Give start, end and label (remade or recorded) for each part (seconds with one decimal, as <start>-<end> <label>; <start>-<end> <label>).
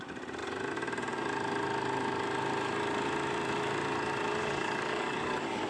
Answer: 0.0-4.4 recorded; 4.4-5.7 remade